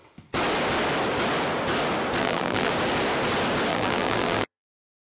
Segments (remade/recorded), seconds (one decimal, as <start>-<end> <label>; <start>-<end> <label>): 0.0-2.2 recorded; 2.2-2.7 remade; 2.7-3.7 recorded; 3.7-5.1 remade